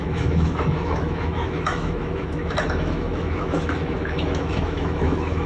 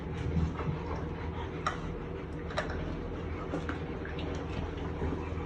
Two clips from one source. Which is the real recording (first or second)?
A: second